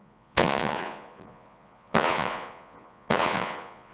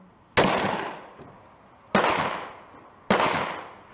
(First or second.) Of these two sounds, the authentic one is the second